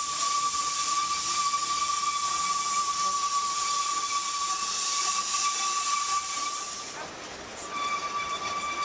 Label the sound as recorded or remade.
remade